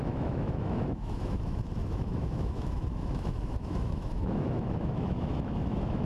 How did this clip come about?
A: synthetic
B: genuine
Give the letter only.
A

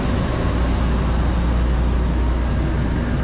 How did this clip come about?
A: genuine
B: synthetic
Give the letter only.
A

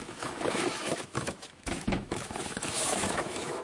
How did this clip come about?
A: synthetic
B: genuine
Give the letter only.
A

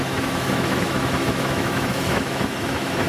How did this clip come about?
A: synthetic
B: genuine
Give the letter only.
A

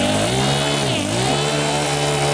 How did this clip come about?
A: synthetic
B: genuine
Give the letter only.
B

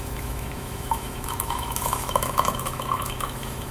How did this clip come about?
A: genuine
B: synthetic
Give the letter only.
B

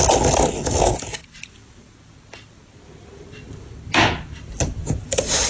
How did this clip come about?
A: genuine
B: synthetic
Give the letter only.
A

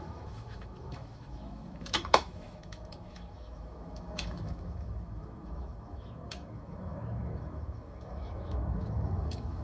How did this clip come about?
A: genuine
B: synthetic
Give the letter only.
B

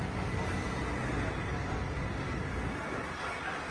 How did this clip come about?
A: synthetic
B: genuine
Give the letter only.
B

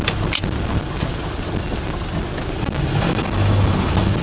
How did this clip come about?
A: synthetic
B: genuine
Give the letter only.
B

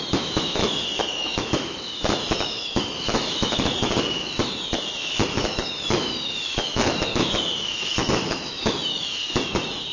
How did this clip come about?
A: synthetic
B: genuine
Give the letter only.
A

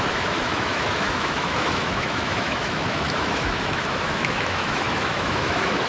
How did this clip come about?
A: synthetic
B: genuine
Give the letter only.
A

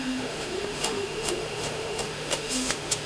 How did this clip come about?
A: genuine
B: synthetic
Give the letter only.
B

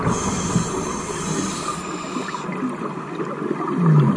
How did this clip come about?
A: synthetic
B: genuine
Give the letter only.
B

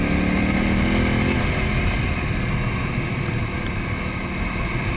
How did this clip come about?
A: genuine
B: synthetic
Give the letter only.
A